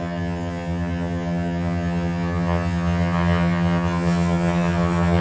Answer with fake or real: fake